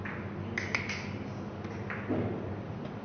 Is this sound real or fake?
real